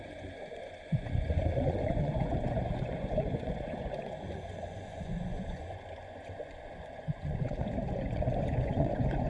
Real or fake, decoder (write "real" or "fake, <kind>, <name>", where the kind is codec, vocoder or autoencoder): fake, vocoder, Vocos